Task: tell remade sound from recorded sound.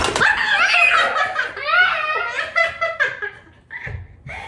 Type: recorded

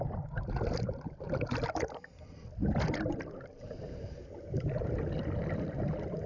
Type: recorded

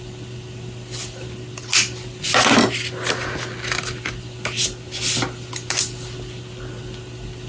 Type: recorded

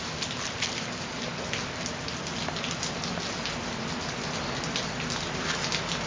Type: recorded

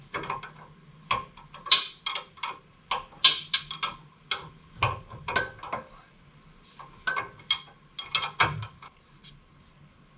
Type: recorded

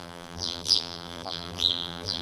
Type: remade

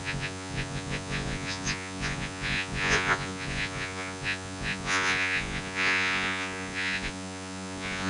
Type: remade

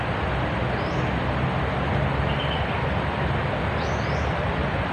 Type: recorded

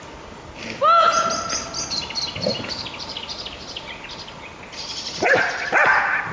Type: recorded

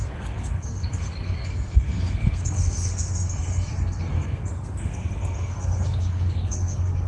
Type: remade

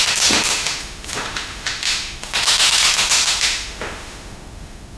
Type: remade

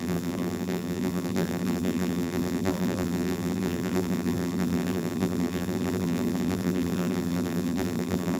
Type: remade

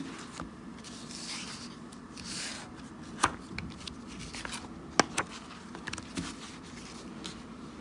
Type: recorded